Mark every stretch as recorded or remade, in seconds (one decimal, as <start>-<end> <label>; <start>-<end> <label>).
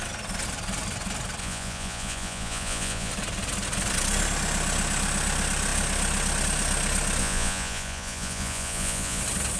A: 0.0-1.4 recorded; 1.4-3.1 remade; 3.1-7.2 recorded; 7.2-9.2 remade; 9.2-9.6 recorded